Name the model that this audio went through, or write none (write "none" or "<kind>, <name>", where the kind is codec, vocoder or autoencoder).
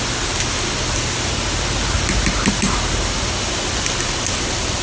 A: none